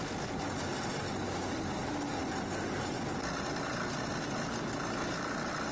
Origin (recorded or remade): recorded